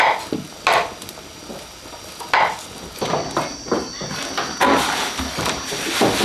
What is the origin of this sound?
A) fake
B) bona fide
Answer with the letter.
B